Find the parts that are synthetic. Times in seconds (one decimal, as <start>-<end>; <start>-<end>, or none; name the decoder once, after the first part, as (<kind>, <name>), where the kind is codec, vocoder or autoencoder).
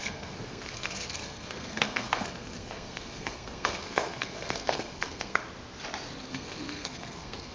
0.0-5.4 (codec, SNAC); 6.3-7.5